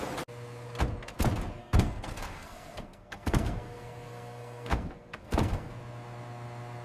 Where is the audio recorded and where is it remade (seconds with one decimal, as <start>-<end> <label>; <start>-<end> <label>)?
0.0-1.6 recorded; 1.6-5.7 remade; 5.7-6.8 recorded